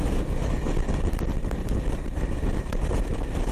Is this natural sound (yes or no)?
yes